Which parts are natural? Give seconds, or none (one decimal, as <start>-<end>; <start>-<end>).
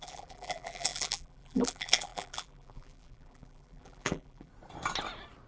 4.5-5.5